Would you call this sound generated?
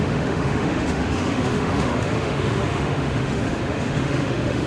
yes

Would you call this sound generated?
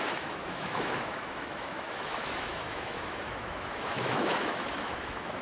yes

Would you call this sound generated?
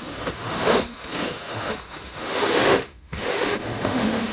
yes